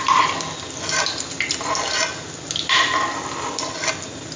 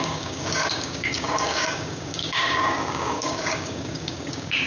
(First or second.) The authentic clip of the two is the first